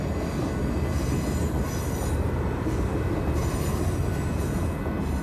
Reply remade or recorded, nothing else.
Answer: recorded